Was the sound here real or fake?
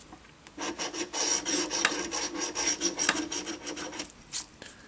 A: real